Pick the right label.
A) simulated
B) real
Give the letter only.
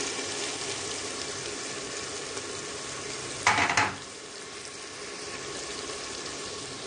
B